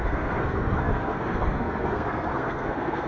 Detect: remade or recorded remade